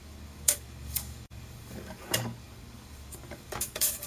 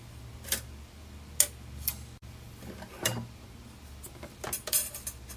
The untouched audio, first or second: second